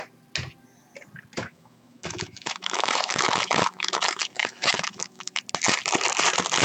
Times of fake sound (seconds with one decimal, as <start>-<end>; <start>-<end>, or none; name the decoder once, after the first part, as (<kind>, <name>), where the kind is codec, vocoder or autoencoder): 1.4-5.4 (autoencoder, DAC-VAE)